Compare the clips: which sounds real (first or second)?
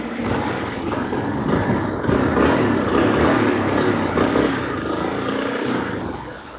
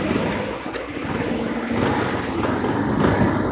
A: second